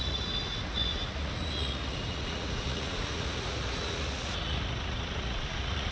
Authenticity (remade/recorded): remade